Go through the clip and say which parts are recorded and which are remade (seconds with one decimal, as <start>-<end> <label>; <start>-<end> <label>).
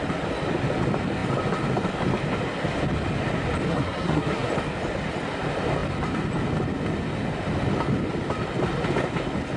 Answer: 0.0-3.7 recorded; 3.7-4.5 remade; 4.5-9.6 recorded